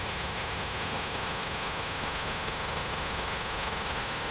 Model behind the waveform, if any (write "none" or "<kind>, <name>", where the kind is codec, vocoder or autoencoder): autoencoder, DAC-VAE